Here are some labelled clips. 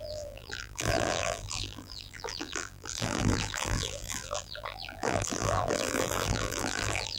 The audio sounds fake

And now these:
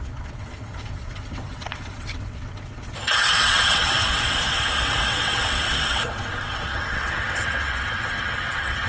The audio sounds fake